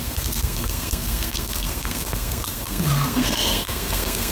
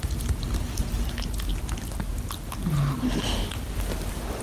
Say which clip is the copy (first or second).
first